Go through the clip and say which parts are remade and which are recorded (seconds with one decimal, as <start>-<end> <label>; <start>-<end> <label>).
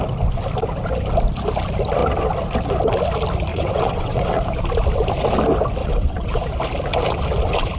0.0-3.5 recorded; 3.5-4.4 remade; 4.4-5.8 recorded; 5.8-6.4 remade; 6.4-7.8 recorded